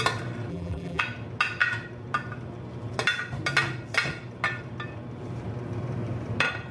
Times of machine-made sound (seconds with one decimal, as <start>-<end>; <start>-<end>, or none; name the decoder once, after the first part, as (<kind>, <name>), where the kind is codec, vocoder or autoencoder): 0.5-1.0 (vocoder, BigVGAN v2)

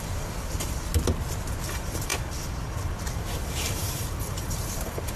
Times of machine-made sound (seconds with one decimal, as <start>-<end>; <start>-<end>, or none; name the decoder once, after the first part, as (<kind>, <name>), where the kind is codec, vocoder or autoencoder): 0.0-0.9 (vocoder, BigVGAN v2); 1.7-5.2

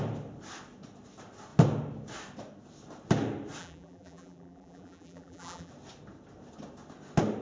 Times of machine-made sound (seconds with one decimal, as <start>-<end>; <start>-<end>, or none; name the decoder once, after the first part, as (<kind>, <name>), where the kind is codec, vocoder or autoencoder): 3.6-5.7 (vocoder, BigVGAN v2)

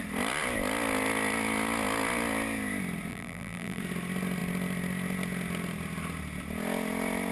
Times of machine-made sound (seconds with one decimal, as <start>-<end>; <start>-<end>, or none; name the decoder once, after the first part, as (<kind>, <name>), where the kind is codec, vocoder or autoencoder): 3.1-3.8 (vocoder, BigVGAN v2)

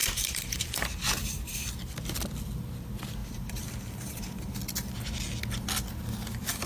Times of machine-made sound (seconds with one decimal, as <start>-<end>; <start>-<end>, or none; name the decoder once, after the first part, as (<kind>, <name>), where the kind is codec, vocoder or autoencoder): 0.0-2.2 (vocoder, BigVGAN v2); 3.2-4.5

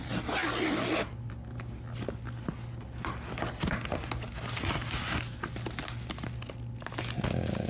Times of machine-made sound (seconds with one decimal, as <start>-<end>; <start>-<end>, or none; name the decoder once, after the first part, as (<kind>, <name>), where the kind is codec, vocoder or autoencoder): none